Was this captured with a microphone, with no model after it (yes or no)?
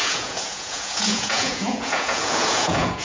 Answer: no